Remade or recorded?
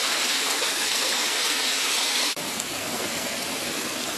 remade